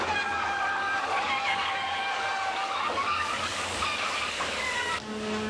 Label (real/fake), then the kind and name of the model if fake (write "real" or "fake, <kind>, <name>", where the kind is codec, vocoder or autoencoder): fake, codec, DAC